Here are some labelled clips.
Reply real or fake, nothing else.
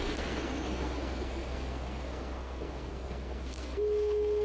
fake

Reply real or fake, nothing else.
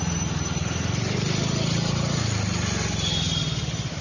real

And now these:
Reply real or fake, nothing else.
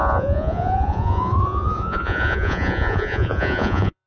fake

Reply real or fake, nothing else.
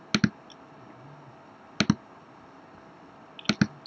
real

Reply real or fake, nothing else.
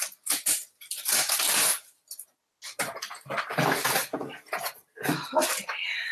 real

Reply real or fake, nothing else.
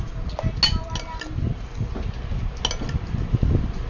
real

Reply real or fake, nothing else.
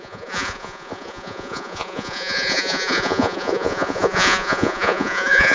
fake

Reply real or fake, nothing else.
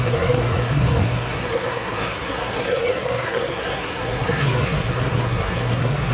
fake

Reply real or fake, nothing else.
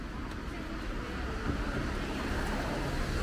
real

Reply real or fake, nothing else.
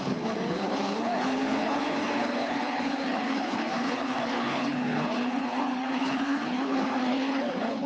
fake